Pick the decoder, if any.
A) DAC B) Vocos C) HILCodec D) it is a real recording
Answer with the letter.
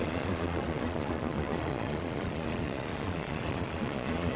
B